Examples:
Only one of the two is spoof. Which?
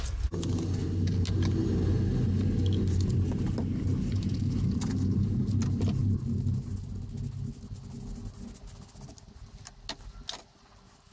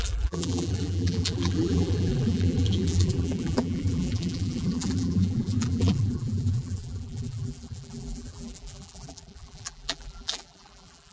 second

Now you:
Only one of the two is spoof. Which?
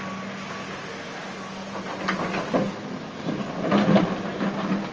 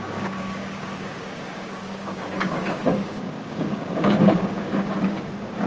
second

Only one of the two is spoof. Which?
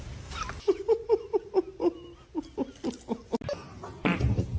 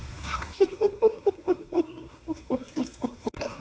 second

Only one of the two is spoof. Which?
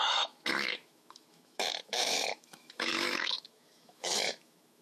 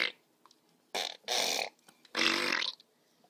first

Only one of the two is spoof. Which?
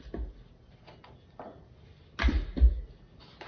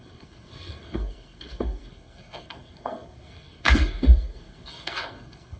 second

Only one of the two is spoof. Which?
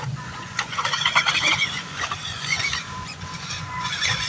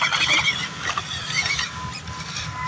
first